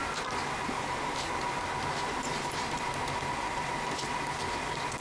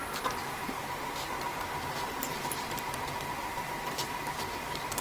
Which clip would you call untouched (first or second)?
first